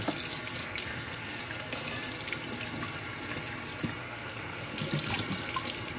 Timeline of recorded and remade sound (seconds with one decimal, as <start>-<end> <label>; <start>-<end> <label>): 0.0-0.6 recorded; 0.6-1.4 remade; 1.4-4.0 recorded; 4.0-4.7 remade; 4.7-6.0 recorded